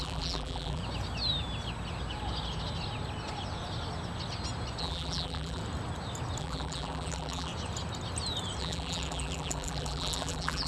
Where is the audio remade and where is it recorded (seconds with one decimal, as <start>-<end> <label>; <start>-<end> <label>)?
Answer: 0.0-0.8 remade; 0.8-4.8 recorded; 4.8-5.6 remade; 5.6-6.4 recorded; 6.4-7.5 remade; 7.5-8.6 recorded; 8.6-10.7 remade